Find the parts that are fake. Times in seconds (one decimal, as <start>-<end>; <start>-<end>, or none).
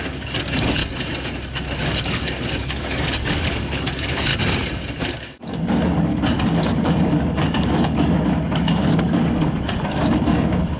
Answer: 0.0-0.8; 1.8-4.3; 5.0-10.8